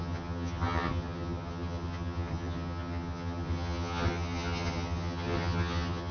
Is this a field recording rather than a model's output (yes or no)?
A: no